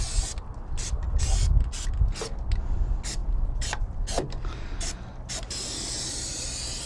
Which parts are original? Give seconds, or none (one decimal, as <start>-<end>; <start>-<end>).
0.0-6.9